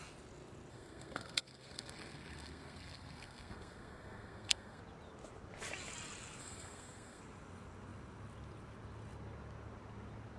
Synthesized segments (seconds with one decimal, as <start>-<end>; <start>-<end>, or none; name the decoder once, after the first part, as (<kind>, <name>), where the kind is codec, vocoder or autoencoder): 0.7-4.8 (codec, SNAC); 6.4-7.2